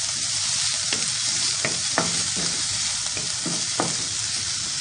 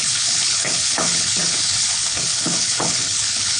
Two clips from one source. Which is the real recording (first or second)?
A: first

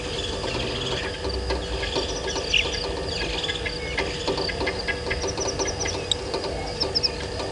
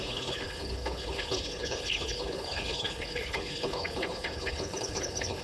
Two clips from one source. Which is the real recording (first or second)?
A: first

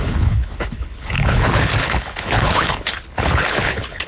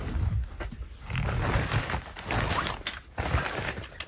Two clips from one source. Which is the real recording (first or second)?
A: second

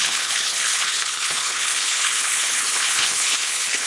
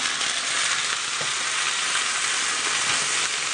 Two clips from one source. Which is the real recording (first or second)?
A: second